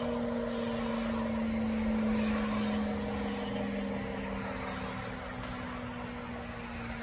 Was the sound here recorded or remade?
recorded